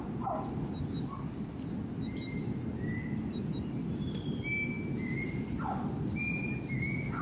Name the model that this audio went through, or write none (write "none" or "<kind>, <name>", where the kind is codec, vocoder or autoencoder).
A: none